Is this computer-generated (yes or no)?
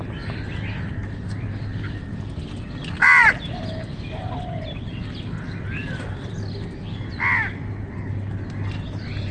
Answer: no